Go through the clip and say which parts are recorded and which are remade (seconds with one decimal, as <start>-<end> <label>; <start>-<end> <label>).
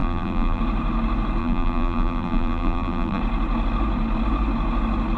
0.0-0.6 remade; 0.6-1.4 recorded; 1.4-3.2 remade; 3.2-5.2 recorded